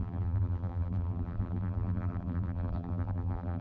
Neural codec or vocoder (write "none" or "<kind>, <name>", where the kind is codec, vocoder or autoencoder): vocoder, BigVGAN v2